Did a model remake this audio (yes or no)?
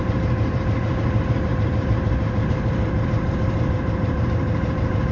yes